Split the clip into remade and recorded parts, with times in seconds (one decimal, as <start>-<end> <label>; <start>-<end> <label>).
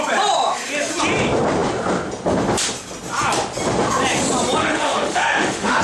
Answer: 0.0-4.6 recorded; 4.6-5.8 remade